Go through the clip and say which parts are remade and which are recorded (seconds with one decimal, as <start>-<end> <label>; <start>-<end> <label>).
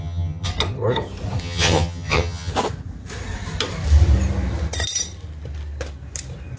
0.0-0.5 remade; 0.5-1.4 recorded; 1.4-2.5 remade; 2.5-6.6 recorded